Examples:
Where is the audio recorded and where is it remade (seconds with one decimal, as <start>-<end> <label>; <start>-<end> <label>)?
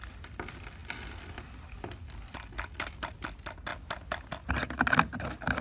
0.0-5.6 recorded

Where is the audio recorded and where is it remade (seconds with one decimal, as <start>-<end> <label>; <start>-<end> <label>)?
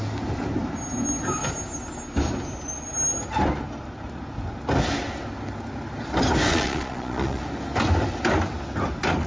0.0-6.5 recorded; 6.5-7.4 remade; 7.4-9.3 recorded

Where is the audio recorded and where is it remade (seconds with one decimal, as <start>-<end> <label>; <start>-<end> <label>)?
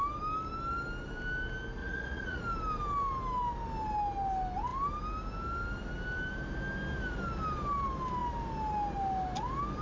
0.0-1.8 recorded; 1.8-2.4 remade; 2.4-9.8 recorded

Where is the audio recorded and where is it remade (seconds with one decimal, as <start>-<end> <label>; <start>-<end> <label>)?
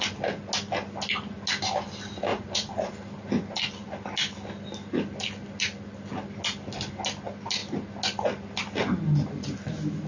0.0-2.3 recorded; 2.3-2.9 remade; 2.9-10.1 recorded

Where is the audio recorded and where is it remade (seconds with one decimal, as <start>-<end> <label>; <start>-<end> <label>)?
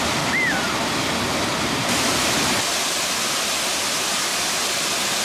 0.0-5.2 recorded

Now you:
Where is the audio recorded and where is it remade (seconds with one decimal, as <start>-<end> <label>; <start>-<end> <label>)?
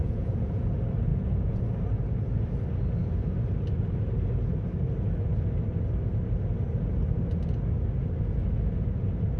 0.0-0.6 remade; 0.6-1.1 recorded; 1.1-1.6 remade; 1.6-9.4 recorded